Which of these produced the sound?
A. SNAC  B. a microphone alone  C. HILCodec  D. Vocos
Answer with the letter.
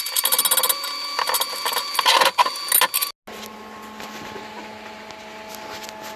B